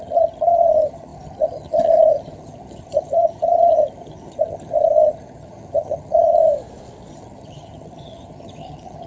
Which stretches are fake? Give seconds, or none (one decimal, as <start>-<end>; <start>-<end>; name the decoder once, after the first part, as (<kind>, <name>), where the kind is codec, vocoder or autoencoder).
0.0-6.4 (vocoder, HiFi-GAN); 7.1-9.1